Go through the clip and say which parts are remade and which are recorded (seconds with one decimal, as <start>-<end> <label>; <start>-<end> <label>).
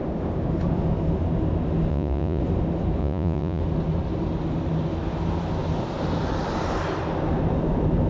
0.0-1.9 recorded; 1.9-2.4 remade; 2.4-3.0 recorded; 3.0-3.6 remade; 3.6-8.1 recorded